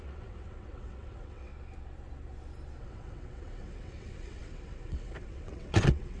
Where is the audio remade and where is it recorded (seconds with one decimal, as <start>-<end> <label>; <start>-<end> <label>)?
0.0-1.5 remade; 1.5-2.8 recorded; 2.8-6.2 remade